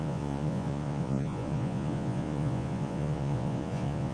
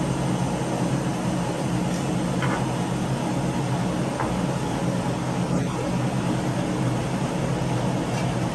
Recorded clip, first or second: second